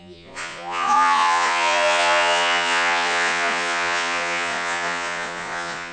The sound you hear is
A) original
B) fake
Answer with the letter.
B